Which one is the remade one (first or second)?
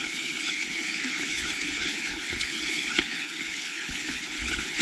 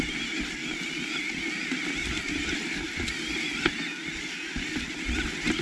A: first